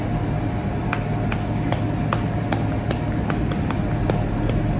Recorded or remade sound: recorded